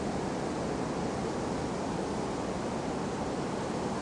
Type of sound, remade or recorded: recorded